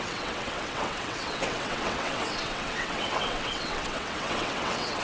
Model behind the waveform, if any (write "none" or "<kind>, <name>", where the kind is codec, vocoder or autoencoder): vocoder, WaveNeXt